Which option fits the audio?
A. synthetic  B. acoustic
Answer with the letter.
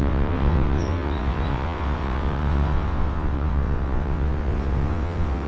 A